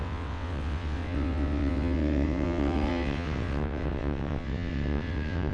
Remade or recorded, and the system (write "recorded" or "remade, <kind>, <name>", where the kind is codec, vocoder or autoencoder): remade, vocoder, WaveNeXt